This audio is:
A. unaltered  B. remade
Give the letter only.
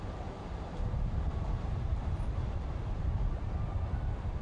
B